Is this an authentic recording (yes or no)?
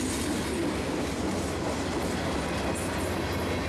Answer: yes